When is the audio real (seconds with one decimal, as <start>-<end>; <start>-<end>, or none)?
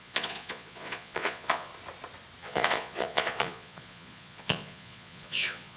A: 1.7-2.4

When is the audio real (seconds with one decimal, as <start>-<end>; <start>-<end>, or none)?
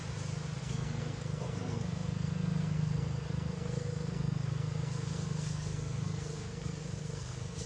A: 0.0-0.6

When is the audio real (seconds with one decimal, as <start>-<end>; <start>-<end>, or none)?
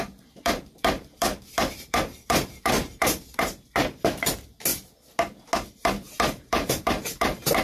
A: 4.7-5.7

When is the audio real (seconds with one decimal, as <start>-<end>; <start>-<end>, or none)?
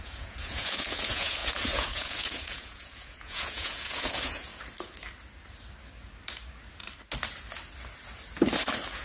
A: 4.5-9.0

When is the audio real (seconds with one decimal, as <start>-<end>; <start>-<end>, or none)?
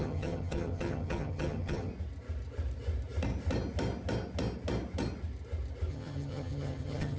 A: 1.9-5.9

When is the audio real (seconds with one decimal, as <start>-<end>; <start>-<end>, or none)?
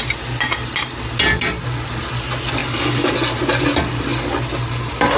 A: 0.0-2.6; 3.1-5.2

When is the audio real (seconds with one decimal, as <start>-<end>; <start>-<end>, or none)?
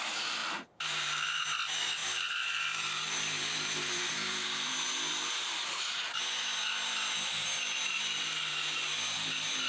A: 0.0-0.4; 1.4-2.0; 6.2-7.9; 8.9-9.7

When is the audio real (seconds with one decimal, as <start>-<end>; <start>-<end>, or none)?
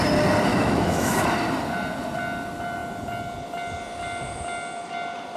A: 0.0-0.5; 1.3-5.4